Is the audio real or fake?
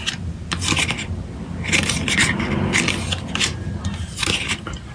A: real